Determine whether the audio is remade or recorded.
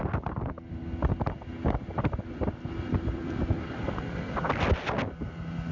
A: recorded